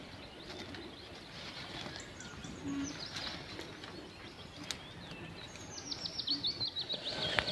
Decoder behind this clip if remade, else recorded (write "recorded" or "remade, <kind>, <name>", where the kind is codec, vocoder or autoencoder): recorded